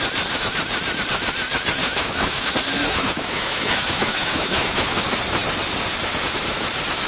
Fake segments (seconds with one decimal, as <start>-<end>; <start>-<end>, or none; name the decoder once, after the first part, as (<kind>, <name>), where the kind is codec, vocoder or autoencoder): 1.8-2.5 (autoencoder, DAC-VAE); 2.9-5.0